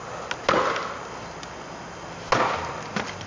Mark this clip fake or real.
real